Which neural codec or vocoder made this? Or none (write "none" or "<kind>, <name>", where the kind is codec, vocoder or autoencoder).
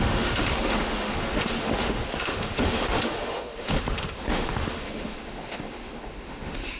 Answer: autoencoder, DAC-VAE